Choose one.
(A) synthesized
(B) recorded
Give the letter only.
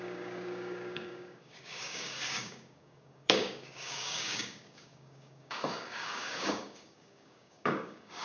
A